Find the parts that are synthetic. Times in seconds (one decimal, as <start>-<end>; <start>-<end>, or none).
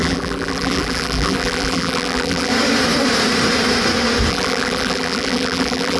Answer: 0.0-2.5; 4.3-6.0